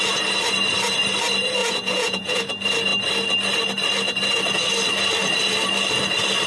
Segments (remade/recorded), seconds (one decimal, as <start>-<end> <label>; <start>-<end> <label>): 0.0-1.6 recorded; 1.6-2.4 remade; 2.4-6.5 recorded